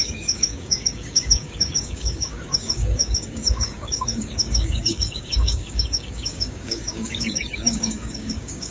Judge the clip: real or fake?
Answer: fake